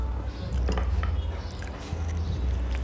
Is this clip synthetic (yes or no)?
no